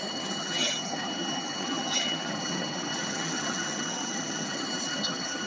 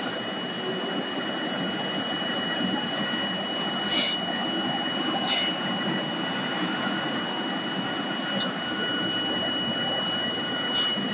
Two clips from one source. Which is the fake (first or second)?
first